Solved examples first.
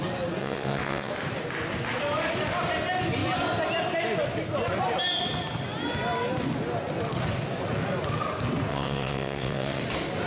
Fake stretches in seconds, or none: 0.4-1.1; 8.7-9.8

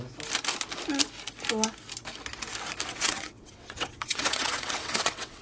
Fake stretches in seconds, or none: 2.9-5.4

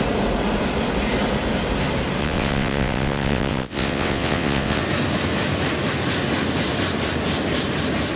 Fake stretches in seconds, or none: 2.2-4.8

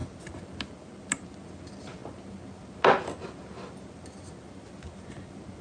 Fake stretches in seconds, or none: none

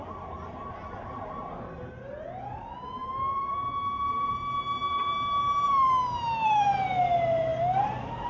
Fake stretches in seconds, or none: none

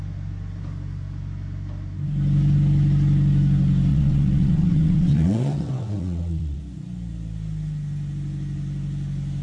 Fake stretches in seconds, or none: 3.9-6.6